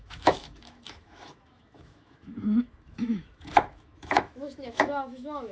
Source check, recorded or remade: remade